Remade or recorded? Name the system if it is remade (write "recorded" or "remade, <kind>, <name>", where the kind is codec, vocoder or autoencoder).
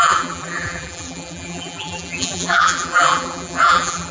remade, vocoder, BigVGAN v2